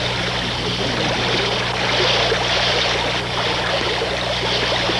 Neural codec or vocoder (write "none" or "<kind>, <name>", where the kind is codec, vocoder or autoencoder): none